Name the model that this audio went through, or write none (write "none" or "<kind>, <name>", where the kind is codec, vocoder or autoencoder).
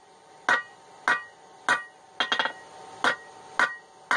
none